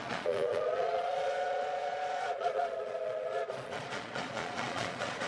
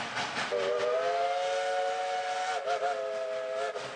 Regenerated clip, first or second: first